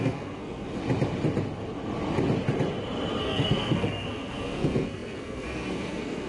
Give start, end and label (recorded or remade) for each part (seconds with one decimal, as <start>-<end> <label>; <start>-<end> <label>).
0.0-0.8 remade; 0.8-3.2 recorded; 3.2-6.3 remade

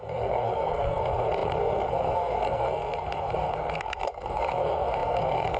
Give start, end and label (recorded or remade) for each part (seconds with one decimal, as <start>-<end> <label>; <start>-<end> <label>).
0.0-5.6 remade